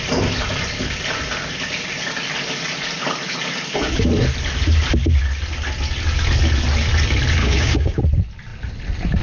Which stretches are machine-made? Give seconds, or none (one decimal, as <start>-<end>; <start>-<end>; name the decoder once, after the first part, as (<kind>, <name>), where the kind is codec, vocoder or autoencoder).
7.4-8.0 (codec, DAC)